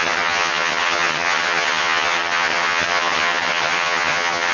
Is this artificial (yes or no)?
yes